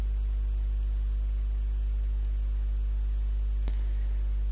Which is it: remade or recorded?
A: recorded